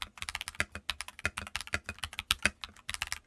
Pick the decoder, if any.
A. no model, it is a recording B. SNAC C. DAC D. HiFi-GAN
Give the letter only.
A